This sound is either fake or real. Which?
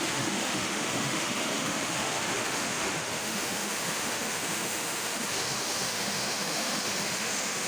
fake